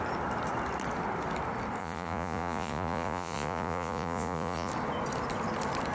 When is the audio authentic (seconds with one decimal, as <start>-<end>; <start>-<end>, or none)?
0.0-1.8; 4.7-5.9